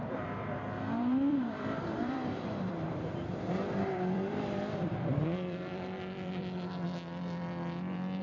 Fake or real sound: fake